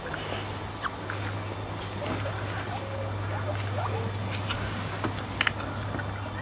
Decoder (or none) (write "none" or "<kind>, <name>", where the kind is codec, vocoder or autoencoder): none